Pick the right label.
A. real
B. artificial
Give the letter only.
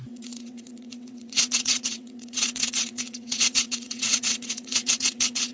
B